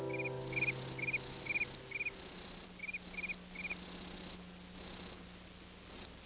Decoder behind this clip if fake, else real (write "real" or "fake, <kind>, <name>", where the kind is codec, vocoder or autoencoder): real